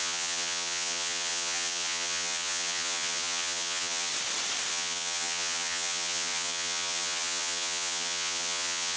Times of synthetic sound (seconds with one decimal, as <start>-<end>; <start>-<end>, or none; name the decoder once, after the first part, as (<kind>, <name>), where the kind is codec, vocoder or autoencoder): 0.0-4.1 (vocoder, HiFi-GAN); 4.7-9.0

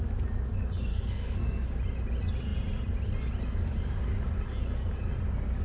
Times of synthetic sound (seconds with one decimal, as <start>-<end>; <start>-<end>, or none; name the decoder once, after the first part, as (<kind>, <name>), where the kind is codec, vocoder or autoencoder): 0.9-1.7 (codec, SNAC)

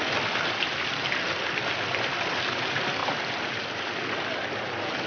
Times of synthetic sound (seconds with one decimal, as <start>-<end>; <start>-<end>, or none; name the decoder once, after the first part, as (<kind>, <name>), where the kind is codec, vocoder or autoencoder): 3.0-4.3 (vocoder, BigVGAN v2)

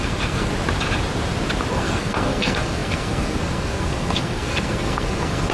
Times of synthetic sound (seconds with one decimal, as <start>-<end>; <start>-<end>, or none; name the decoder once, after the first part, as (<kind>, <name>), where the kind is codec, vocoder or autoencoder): 0.0-0.5 (codec, SNAC); 1.7-5.5

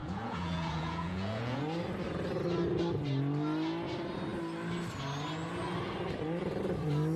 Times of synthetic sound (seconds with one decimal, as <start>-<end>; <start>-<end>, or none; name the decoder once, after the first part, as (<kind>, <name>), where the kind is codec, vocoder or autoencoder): 0.0-1.6 (vocoder, Vocos)

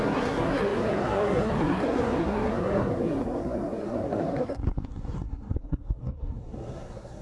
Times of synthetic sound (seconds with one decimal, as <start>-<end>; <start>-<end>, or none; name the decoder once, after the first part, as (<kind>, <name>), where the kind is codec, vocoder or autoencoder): 0.0-7.2 (codec, SNAC)

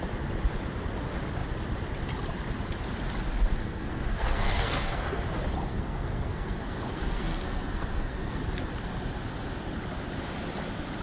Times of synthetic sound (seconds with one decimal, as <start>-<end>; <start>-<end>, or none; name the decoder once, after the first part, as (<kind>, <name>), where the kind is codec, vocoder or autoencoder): 3.6-5.2 (codec, SNAC); 5.7-8.4